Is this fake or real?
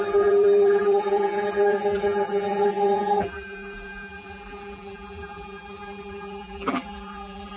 fake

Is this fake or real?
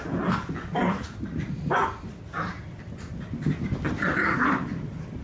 real